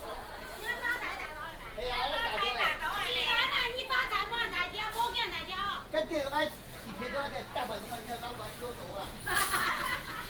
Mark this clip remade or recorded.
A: remade